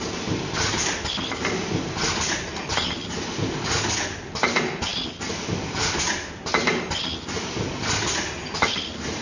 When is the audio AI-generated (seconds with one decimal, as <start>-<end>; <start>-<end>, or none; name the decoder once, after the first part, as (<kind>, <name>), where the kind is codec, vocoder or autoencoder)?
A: none